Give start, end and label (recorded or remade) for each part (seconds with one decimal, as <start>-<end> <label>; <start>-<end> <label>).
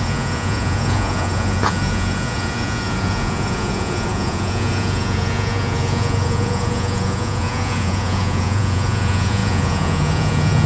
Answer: 0.0-10.7 remade